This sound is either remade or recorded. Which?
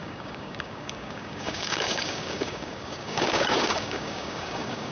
remade